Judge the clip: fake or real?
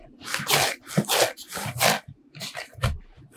real